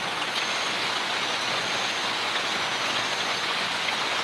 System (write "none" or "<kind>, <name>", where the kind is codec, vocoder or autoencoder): vocoder, Vocos